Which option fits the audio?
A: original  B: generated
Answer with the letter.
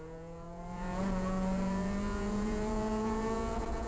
B